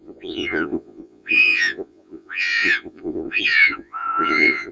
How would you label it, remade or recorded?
remade